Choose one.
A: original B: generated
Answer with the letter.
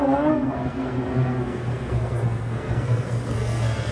B